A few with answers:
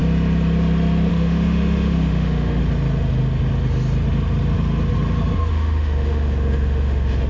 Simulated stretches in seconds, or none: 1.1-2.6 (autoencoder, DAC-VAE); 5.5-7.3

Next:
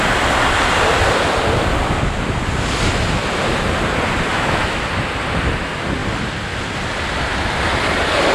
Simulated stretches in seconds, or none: 4.3-4.9 (autoencoder, DAC-VAE)

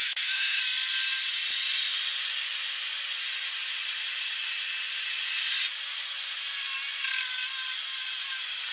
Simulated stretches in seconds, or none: 0.0-0.6 (autoencoder, DAC-VAE)

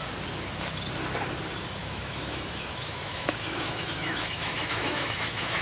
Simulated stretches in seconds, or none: 1.8-5.6 (autoencoder, DAC-VAE)

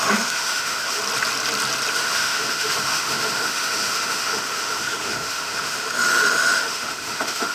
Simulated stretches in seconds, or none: 0.0-1.0 (autoencoder, DAC-VAE); 1.9-7.5